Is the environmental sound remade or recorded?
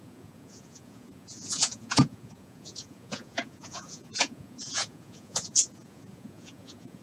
remade